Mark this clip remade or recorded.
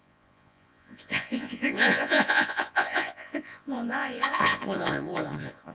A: remade